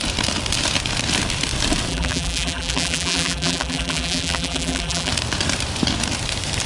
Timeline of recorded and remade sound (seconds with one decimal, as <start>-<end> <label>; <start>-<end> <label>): 0.0-1.9 recorded; 1.9-5.1 remade; 5.1-6.7 recorded